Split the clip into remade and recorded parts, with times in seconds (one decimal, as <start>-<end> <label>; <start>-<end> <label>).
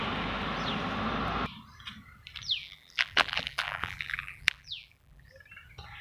0.0-2.6 recorded; 2.6-5.3 remade; 5.3-6.0 recorded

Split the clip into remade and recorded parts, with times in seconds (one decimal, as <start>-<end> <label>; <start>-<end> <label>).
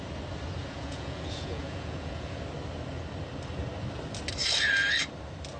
0.0-0.6 recorded; 0.6-2.4 remade; 2.4-5.6 recorded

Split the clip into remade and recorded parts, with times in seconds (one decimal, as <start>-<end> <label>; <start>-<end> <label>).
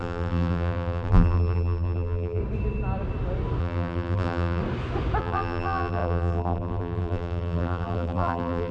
0.0-2.4 remade; 2.4-3.6 recorded; 3.6-4.6 remade; 4.6-5.2 recorded; 5.2-8.7 remade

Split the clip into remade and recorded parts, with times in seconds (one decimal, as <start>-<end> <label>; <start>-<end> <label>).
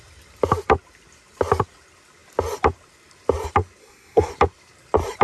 0.0-3.8 recorded; 3.8-4.3 remade; 4.3-5.2 recorded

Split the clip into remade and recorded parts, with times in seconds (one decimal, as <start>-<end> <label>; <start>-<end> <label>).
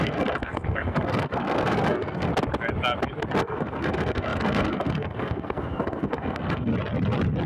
0.0-2.3 remade; 2.3-3.4 recorded; 3.4-6.7 remade; 6.7-7.5 recorded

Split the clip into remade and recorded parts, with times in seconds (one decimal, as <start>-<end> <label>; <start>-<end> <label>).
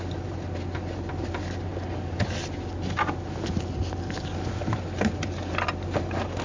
0.0-6.4 recorded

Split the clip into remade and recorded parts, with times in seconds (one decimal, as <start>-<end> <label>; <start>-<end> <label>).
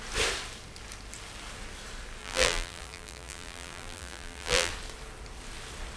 0.0-2.2 recorded; 2.2-4.7 remade; 4.7-6.0 recorded